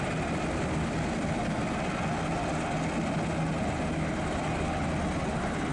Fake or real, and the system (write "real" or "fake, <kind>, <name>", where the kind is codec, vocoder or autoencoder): real